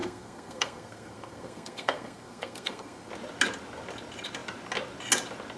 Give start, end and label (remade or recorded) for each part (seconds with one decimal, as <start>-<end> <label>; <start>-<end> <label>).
0.0-3.1 remade; 3.1-5.6 recorded